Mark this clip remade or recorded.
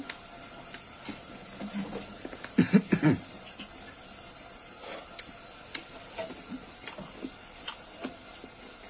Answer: recorded